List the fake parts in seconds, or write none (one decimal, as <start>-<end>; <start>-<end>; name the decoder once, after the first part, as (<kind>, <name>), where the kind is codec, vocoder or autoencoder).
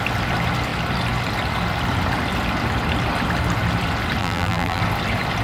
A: 4.2-4.8 (vocoder, BigVGAN v2)